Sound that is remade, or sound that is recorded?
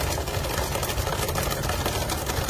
recorded